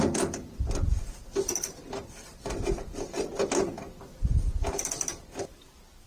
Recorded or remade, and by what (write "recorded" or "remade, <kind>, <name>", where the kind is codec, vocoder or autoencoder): recorded